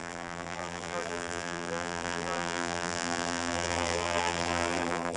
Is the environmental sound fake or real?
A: fake